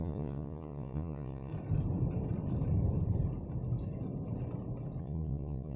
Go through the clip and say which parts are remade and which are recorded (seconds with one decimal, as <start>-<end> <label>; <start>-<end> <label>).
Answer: 0.0-1.5 remade; 1.5-5.0 recorded; 5.0-5.8 remade